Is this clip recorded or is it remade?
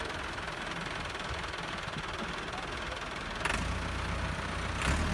recorded